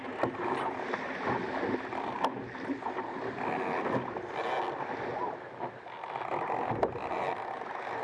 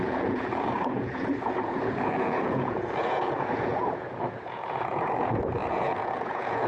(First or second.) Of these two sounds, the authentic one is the first